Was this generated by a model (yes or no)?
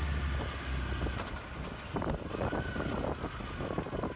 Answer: no